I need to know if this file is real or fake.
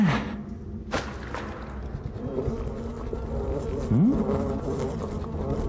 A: real